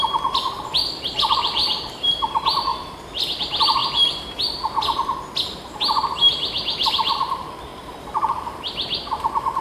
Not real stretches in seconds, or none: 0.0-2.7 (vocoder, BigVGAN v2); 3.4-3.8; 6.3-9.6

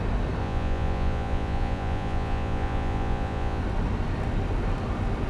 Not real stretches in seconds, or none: 0.4-3.6 (vocoder, Vocos)

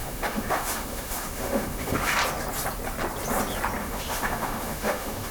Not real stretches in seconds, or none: 0.0-2.1 (autoencoder, DAC-VAE); 3.8-5.3